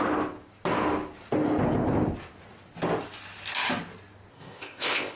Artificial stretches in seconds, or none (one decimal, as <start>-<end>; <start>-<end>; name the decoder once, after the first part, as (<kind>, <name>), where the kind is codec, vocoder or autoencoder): 4.3-5.2 (codec, ZipCodec)